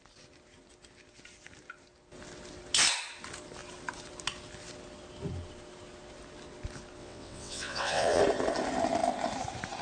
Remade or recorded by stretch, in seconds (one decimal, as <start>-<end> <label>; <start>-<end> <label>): 0.0-7.0 recorded; 7.0-8.2 remade; 8.2-9.8 recorded